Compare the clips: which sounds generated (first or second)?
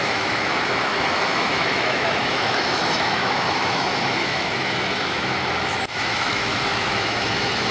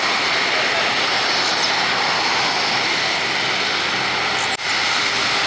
first